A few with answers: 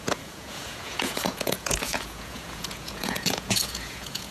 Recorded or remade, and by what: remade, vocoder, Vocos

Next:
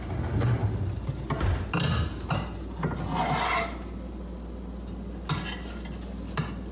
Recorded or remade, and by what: recorded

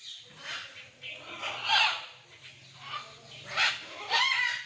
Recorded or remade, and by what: recorded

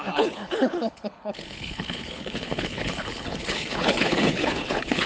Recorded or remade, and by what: remade, codec, HILCodec